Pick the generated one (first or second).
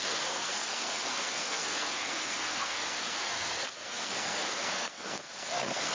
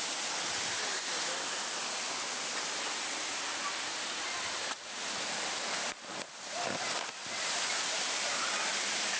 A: first